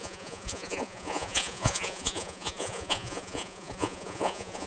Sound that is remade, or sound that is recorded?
remade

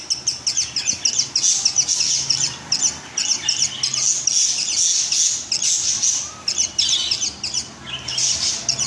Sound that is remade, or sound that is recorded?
recorded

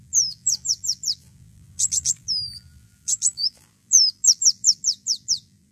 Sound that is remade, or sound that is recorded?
remade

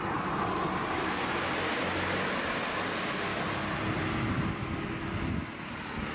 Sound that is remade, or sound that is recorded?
recorded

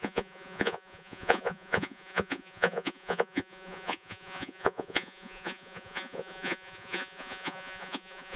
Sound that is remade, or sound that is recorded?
remade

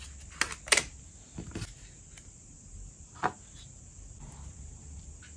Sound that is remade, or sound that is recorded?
recorded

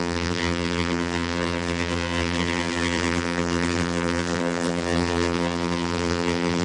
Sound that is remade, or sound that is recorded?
remade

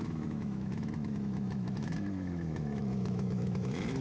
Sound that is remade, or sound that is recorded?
remade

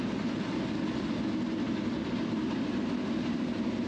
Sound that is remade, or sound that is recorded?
recorded